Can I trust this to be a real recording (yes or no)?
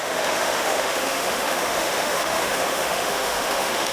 no